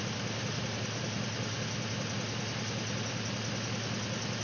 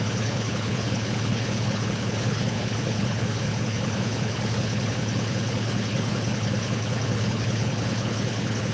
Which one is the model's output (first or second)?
second